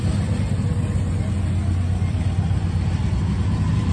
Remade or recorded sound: recorded